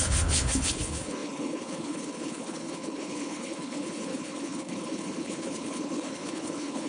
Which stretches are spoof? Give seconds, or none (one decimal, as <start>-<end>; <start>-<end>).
0.0-6.9